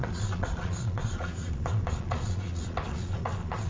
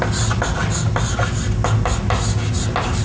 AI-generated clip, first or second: first